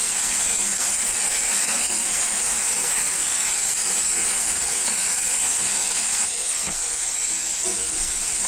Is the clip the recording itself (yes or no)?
no